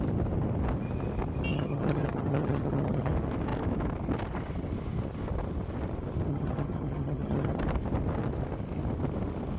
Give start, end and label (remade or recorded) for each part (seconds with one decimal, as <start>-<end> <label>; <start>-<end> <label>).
0.0-1.5 recorded; 1.5-3.1 remade; 3.1-6.3 recorded; 6.3-7.6 remade; 7.6-9.6 recorded